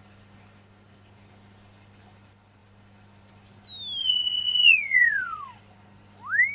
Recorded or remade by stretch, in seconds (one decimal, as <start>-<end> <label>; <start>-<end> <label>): 0.0-4.0 recorded; 4.0-5.6 remade; 5.6-6.5 recorded